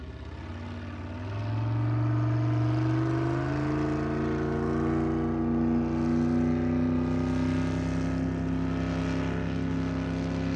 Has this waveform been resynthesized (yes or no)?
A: no